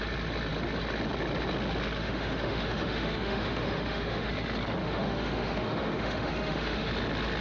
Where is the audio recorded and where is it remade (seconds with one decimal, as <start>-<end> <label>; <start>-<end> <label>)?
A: 0.0-2.0 recorded; 2.0-4.3 remade; 4.3-4.8 recorded; 4.8-6.9 remade; 6.9-7.4 recorded